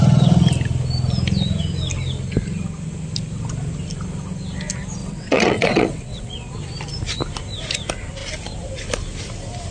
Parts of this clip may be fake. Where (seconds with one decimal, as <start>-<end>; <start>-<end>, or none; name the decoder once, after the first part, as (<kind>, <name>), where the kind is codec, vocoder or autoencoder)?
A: 5.0-6.3 (vocoder, WaveNeXt)